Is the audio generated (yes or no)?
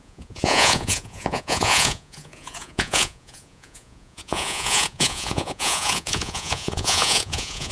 yes